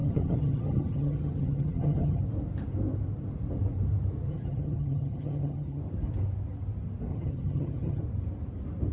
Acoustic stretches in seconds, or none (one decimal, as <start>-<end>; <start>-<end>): 2.2-4.3; 5.8-7.1; 8.0-8.9